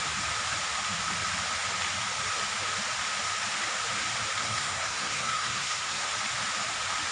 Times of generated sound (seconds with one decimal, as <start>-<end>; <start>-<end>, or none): 4.4-6.1